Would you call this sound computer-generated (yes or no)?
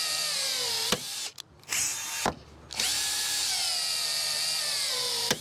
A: no